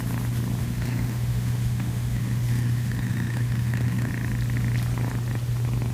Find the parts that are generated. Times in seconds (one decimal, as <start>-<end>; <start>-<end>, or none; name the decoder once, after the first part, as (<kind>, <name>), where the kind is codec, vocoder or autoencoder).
0.6-4.1 (autoencoder, DAC-VAE)